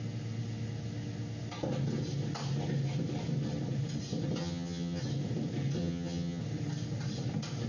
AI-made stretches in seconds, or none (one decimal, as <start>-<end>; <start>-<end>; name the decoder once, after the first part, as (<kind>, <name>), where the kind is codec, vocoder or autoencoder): 4.4-5.0 (vocoder, HiFi-GAN); 5.8-6.4